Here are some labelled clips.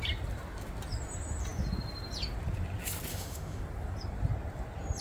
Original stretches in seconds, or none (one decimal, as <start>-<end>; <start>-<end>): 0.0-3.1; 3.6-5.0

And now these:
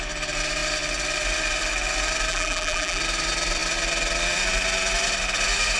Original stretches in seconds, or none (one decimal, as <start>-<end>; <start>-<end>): 0.0-2.3; 3.0-5.8

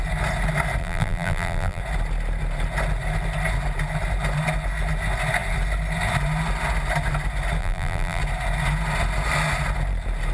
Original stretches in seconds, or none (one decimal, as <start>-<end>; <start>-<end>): 0.0-0.8; 1.8-7.6; 8.2-10.3

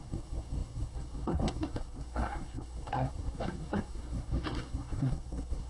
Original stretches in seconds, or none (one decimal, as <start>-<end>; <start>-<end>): none

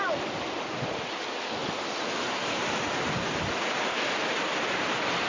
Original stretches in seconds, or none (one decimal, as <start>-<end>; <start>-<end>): 0.0-5.3